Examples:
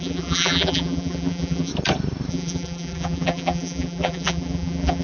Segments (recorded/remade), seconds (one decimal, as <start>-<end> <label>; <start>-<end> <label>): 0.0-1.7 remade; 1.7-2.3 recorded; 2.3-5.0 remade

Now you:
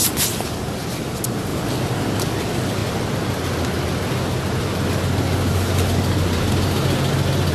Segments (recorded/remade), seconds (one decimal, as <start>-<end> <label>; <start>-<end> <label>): 0.0-1.5 remade; 1.5-2.2 recorded; 2.2-2.8 remade; 2.8-7.5 recorded

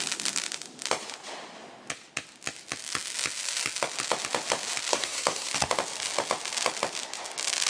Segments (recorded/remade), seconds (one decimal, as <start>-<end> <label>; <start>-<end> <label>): 0.0-4.9 recorded; 4.9-5.5 remade; 5.5-7.7 recorded

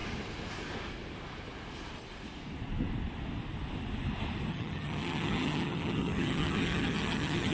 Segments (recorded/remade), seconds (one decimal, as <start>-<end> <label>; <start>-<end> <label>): 0.0-4.5 recorded; 4.5-7.5 remade